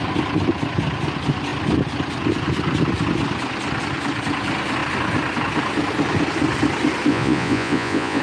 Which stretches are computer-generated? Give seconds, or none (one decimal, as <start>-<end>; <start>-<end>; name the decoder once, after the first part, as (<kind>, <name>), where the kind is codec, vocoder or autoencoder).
7.1-8.2 (vocoder, Vocos)